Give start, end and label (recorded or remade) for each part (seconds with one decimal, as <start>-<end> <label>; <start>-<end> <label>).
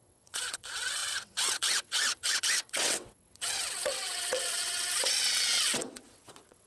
0.0-6.7 remade